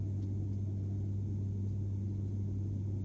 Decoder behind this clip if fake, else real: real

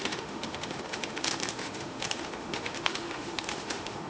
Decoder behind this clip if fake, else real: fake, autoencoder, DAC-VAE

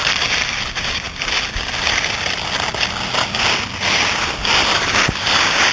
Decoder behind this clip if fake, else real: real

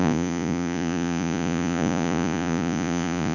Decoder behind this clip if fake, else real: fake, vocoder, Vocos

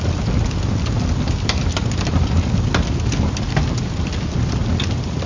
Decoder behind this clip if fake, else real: real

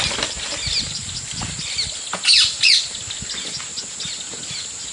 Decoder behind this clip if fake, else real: real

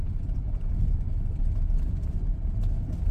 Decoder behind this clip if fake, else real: real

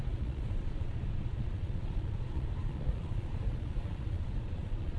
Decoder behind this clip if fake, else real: fake, vocoder, Vocos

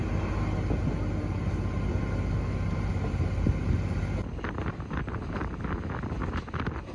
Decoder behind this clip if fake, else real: real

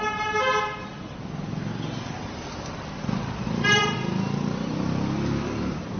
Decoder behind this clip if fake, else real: real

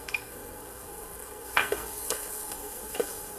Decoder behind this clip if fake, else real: fake, codec, SNAC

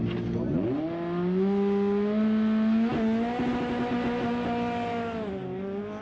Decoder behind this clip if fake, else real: real